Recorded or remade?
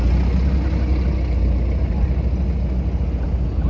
recorded